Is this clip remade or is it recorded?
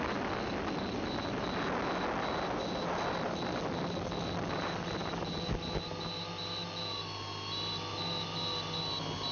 recorded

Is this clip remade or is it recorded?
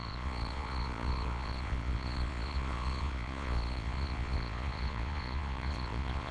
remade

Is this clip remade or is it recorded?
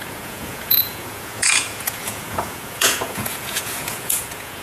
remade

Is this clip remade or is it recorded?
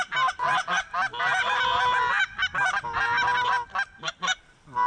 recorded